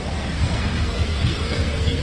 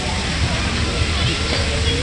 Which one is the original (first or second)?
second